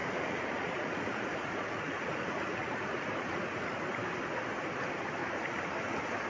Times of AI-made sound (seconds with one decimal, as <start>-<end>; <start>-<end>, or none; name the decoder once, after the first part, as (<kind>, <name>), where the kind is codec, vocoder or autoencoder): 0.0-3.8 (vocoder, Vocos)